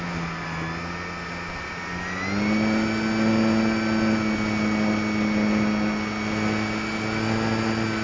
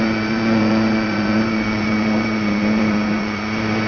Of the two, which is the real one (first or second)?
first